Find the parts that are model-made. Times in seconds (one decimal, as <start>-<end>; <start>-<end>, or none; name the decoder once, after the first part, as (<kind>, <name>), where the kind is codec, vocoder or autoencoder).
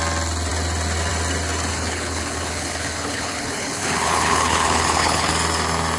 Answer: 1.7-5.3 (codec, HILCodec)